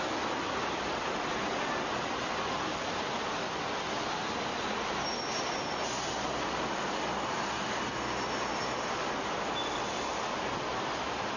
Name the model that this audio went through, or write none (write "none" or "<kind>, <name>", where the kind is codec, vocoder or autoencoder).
none